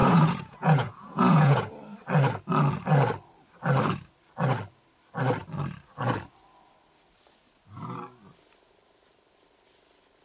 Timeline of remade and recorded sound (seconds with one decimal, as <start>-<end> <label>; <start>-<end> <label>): 0.0-1.7 remade; 1.7-10.2 recorded